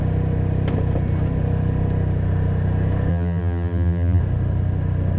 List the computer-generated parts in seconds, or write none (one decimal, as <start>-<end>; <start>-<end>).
3.1-4.2